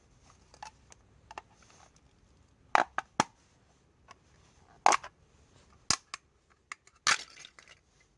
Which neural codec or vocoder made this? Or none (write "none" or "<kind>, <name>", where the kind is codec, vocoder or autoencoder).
none